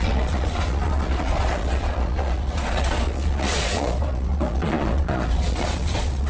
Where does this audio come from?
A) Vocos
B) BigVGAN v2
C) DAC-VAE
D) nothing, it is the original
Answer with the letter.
A